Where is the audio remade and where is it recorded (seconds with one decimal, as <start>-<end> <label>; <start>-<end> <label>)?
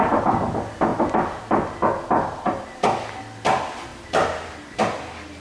0.0-3.9 recorded; 3.9-4.7 remade; 4.7-5.4 recorded